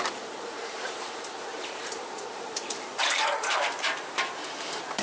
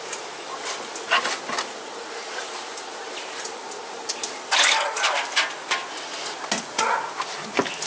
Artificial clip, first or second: first